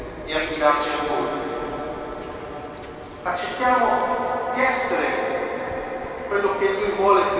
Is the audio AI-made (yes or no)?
no